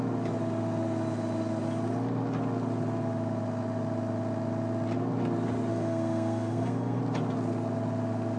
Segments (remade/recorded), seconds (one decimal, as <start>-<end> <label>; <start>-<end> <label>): 0.0-5.7 recorded; 5.7-7.0 remade; 7.0-8.4 recorded